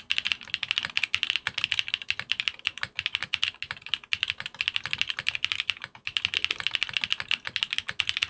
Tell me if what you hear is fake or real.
real